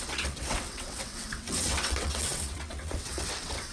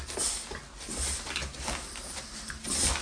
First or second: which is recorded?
second